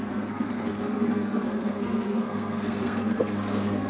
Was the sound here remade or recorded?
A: remade